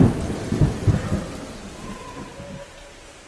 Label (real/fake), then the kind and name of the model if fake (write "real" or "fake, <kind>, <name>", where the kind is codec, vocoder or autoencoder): real